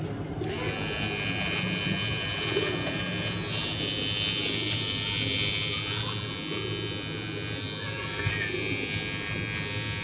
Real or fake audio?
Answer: real